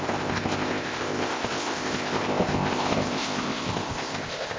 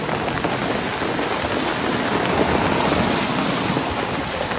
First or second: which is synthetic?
first